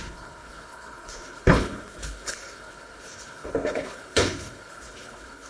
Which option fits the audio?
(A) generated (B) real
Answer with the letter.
A